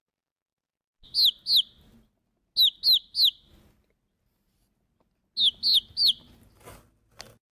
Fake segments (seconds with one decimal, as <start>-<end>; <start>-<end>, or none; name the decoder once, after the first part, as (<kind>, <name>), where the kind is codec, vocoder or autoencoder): none